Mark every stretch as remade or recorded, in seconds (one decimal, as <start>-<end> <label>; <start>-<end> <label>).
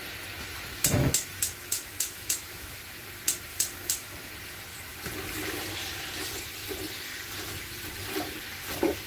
0.0-0.7 recorded; 0.7-2.8 remade; 2.8-3.5 recorded; 3.5-4.3 remade; 4.3-9.1 recorded